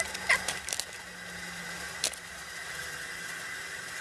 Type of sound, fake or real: real